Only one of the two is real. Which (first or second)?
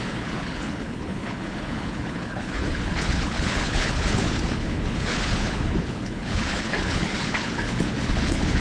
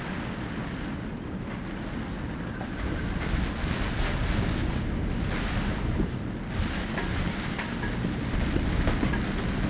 second